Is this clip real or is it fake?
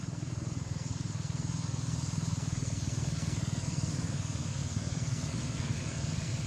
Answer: fake